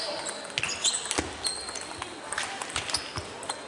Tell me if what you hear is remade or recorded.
recorded